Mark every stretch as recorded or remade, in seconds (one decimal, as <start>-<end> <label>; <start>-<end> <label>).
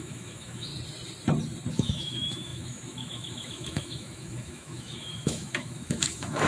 0.0-0.7 remade; 0.7-1.7 recorded; 1.7-6.5 remade